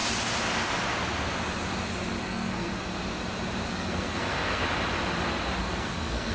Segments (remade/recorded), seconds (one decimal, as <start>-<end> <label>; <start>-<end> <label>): 0.0-2.2 recorded; 2.2-2.9 remade; 2.9-3.7 recorded; 3.7-4.6 remade; 4.6-5.6 recorded; 5.6-6.3 remade